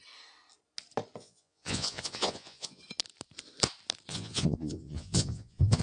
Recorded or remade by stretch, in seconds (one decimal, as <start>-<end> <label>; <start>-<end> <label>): 0.0-1.2 recorded; 1.2-2.8 remade; 2.8-4.1 recorded; 4.1-5.8 remade